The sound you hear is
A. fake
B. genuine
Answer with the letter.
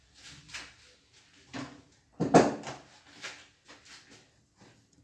B